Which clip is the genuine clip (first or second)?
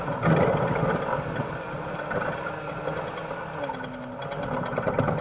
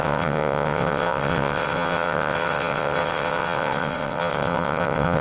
first